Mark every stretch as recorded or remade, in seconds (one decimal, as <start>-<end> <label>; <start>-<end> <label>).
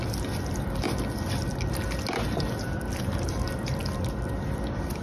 0.0-3.0 recorded; 3.0-3.8 remade; 3.8-5.0 recorded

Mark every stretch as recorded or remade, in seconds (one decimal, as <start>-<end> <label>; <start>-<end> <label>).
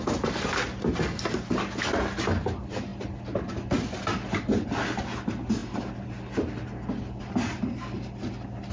0.0-8.7 recorded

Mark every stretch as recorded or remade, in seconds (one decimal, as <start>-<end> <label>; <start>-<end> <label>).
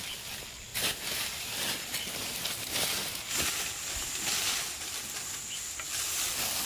0.0-6.6 recorded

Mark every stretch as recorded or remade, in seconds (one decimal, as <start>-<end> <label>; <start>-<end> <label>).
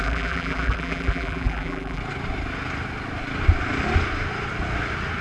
0.0-2.0 remade; 2.0-5.2 recorded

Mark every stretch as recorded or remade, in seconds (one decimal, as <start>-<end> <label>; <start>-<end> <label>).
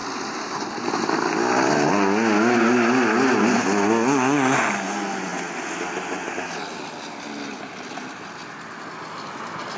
0.0-9.8 recorded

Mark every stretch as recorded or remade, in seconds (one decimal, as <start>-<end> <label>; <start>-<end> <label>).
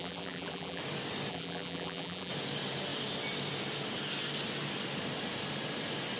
0.0-0.8 remade; 0.8-1.3 recorded; 1.3-2.3 remade; 2.3-6.2 recorded